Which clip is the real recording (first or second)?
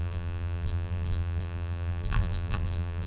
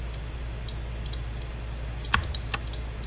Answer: second